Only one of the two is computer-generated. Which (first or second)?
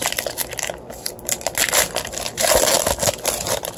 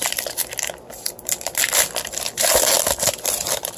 second